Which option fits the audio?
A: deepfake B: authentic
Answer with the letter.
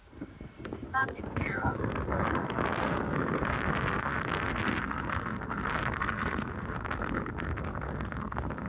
A